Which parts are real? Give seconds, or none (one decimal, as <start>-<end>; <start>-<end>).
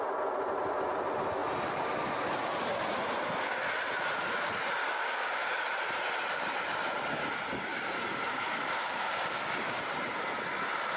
0.0-4.8; 5.6-8.1; 9.8-11.0